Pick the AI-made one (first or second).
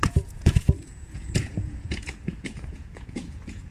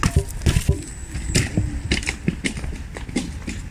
first